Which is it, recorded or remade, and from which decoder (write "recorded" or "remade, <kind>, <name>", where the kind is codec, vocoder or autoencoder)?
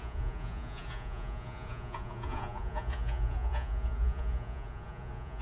remade, vocoder, Vocos